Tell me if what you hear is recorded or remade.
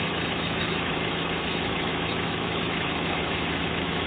remade